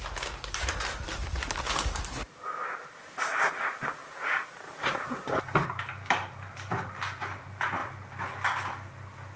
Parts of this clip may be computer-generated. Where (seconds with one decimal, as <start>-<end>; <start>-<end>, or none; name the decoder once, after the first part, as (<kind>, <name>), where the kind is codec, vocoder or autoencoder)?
4.0-5.1 (vocoder, BigVGAN v2)